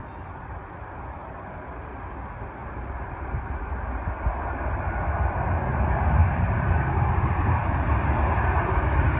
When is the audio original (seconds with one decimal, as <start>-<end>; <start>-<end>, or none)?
0.0-1.2; 1.8-2.6; 3.5-6.2; 6.9-9.2